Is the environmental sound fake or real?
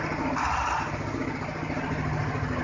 real